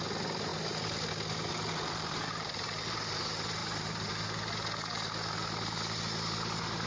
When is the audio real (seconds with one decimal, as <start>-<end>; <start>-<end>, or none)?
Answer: 0.0-1.5; 3.2-3.6; 4.1-6.9